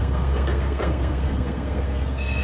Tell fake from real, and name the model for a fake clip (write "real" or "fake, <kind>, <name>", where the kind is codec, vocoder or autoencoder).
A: fake, codec, SNAC